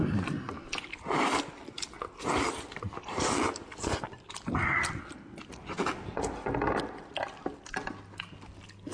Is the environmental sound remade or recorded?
remade